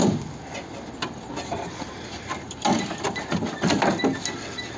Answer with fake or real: real